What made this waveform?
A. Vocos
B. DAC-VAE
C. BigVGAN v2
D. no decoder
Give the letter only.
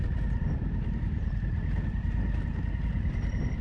C